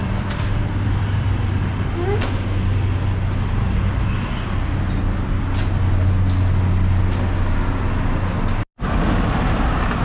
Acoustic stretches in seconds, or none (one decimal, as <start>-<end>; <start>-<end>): 1.6-10.0